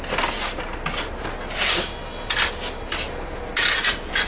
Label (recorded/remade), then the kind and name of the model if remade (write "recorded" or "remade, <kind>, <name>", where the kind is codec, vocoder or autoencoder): recorded